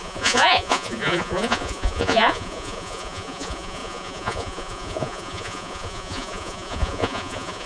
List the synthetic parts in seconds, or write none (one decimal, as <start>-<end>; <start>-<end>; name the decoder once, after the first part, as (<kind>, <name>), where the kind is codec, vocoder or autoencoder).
0.0-7.7 (vocoder, Vocos)